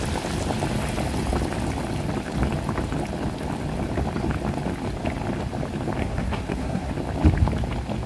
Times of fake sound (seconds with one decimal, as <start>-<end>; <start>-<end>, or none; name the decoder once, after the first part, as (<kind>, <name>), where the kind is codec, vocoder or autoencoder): 6.0-6.9 (codec, SNAC)